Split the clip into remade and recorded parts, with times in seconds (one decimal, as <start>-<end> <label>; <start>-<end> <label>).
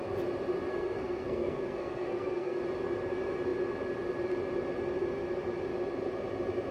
0.0-0.7 recorded; 0.7-2.6 remade; 2.6-6.7 recorded